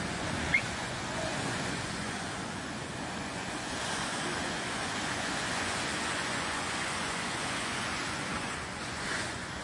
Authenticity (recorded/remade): remade